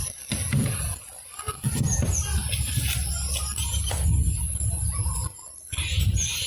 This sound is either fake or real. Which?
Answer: real